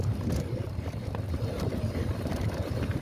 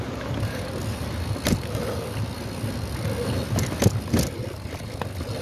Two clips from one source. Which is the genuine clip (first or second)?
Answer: second